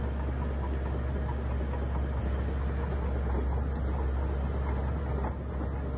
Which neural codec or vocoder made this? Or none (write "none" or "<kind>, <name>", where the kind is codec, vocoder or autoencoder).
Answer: none